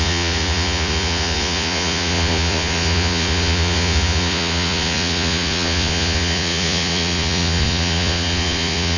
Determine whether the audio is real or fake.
fake